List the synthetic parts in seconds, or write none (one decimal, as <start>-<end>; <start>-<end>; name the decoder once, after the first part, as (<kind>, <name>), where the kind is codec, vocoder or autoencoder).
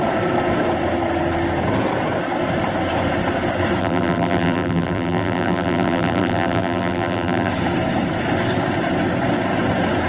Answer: 3.8-7.5 (vocoder, BigVGAN v2)